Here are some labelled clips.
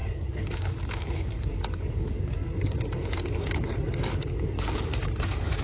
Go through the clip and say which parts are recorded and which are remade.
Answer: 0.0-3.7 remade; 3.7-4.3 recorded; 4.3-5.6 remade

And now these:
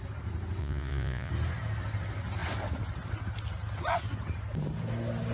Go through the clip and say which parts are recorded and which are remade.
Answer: 0.0-0.6 recorded; 0.6-1.3 remade; 1.3-5.3 recorded

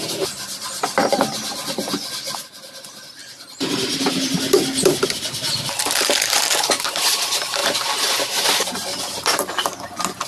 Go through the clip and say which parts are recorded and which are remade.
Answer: 0.0-10.3 remade

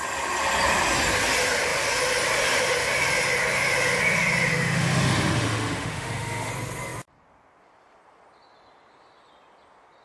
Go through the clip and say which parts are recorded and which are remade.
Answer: 0.0-4.5 recorded; 4.5-6.5 remade; 6.5-10.0 recorded

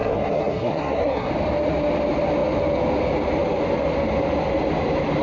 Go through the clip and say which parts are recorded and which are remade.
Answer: 0.0-1.3 remade; 1.3-5.2 recorded

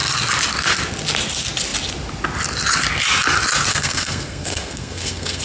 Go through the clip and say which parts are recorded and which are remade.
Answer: 0.0-3.7 recorded; 3.7-5.4 remade

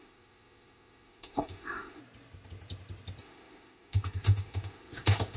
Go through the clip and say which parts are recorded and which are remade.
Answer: 0.0-2.0 remade; 2.0-3.2 recorded; 3.2-5.4 remade

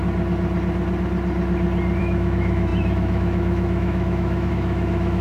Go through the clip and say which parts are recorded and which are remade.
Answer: 0.0-2.0 recorded; 2.0-5.2 remade